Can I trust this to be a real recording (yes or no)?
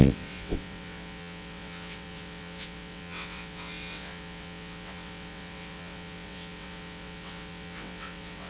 no